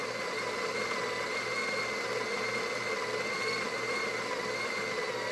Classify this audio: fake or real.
real